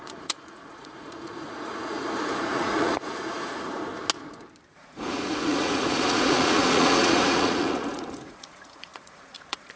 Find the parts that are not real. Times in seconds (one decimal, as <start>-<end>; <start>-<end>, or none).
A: 0.0-3.9; 4.7-9.8